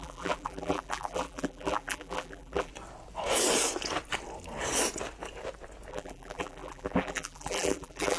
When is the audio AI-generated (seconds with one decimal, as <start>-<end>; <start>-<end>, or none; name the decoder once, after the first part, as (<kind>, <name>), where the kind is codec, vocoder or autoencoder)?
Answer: 0.0-2.7 (vocoder, BigVGAN v2); 5.9-8.2